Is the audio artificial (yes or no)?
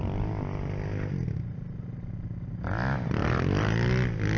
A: no